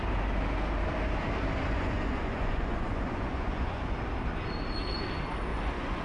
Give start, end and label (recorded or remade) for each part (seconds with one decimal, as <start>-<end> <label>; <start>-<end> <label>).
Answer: 0.0-1.6 recorded; 1.6-4.0 remade; 4.0-5.5 recorded; 5.5-6.0 remade